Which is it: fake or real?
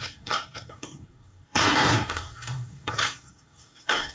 fake